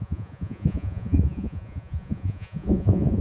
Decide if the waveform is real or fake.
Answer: fake